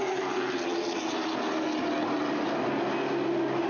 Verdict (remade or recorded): recorded